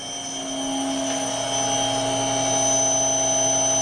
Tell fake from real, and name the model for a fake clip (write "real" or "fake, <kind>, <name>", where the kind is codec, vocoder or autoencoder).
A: real